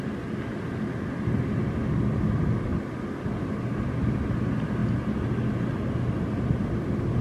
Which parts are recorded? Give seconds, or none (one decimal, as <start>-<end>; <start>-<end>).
0.0-7.2